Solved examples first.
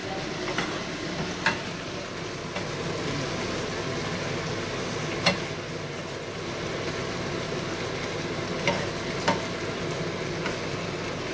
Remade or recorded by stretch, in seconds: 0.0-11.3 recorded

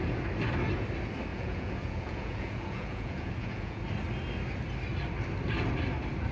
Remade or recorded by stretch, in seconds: 0.0-1.3 recorded; 1.3-3.8 remade; 3.8-6.3 recorded